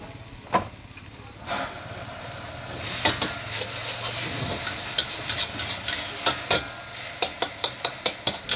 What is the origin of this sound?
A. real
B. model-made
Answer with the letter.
A